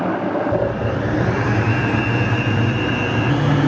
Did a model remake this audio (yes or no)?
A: yes